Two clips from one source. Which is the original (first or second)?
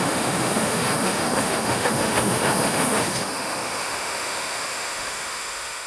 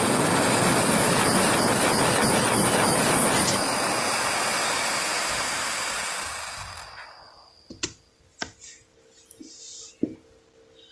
second